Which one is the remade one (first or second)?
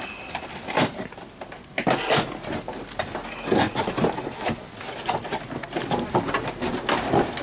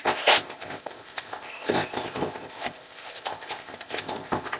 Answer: second